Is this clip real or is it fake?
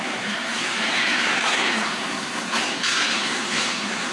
fake